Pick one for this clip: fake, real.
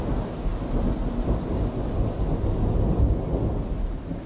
real